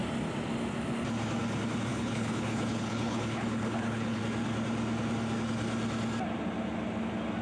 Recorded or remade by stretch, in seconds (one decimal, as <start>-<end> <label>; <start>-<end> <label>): 0.0-1.9 recorded; 1.9-4.2 remade; 4.2-7.4 recorded